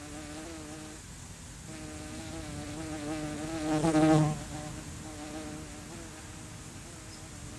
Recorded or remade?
recorded